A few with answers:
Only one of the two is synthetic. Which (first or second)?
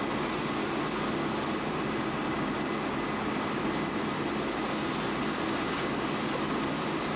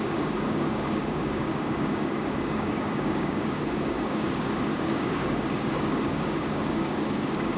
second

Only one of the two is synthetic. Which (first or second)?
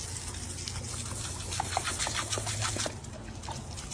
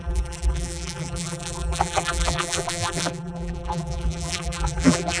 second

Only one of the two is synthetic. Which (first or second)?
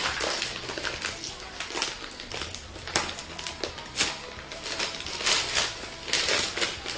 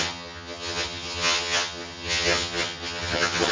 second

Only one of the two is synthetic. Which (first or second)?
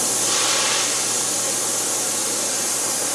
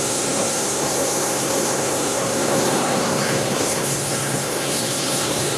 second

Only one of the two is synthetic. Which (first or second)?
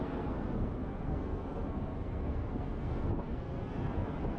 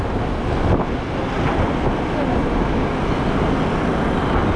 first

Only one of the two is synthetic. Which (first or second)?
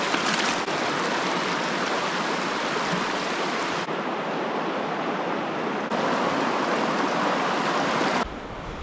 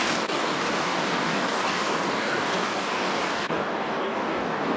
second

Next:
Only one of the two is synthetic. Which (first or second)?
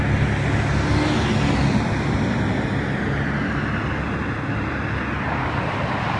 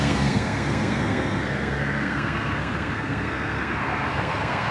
second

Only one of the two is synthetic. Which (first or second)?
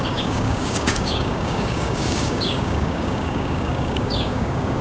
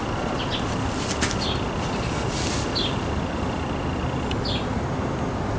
first